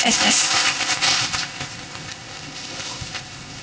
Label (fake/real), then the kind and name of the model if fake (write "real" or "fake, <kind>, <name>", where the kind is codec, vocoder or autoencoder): fake, codec, ZipCodec